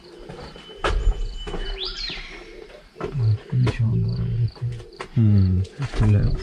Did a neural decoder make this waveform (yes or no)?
yes